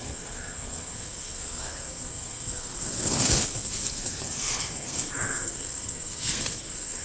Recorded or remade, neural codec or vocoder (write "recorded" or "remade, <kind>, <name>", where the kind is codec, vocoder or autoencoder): remade, codec, SNAC